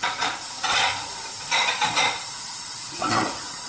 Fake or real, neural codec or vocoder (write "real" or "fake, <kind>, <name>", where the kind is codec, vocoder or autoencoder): fake, vocoder, Vocos